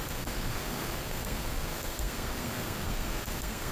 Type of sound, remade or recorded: remade